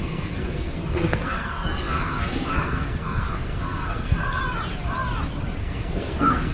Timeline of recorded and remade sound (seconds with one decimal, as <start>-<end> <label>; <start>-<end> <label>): 0.0-4.4 remade; 4.4-5.6 recorded; 5.6-6.5 remade

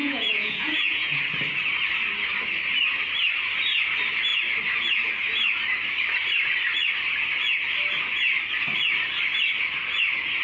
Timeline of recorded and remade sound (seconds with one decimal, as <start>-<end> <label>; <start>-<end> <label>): 0.0-1.2 remade; 1.2-10.4 recorded

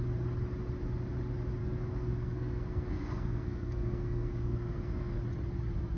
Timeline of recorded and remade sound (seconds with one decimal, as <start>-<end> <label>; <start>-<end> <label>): 0.0-1.6 recorded; 1.6-5.2 remade; 5.2-6.0 recorded

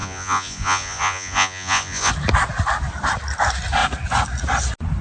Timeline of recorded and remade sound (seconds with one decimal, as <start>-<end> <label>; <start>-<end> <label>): 0.0-2.1 remade; 2.1-5.0 recorded

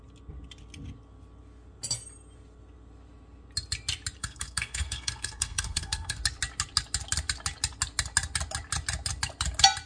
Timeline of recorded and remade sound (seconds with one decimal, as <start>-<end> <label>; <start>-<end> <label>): 0.0-4.2 recorded; 4.2-6.2 remade; 6.2-9.9 recorded